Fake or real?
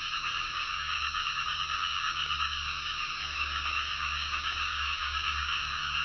fake